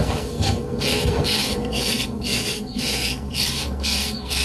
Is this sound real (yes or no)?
no